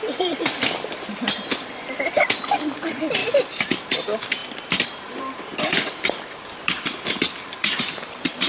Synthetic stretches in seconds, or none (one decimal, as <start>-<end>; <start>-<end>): 0.0-1.1; 2.0-3.2; 3.9-8.5